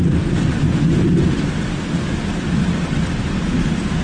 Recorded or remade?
recorded